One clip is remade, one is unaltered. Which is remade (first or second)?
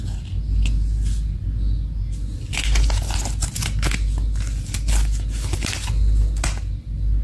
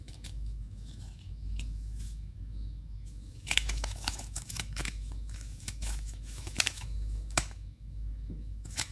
second